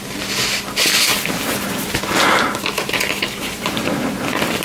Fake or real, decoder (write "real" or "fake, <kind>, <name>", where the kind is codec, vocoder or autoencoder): real